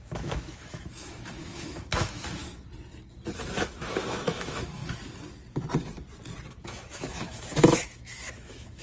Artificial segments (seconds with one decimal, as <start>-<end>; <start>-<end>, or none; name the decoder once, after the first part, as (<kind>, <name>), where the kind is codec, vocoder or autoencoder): 0.0-2.4 (autoencoder, DAC-VAE); 3.6-4.8; 6.5-8.8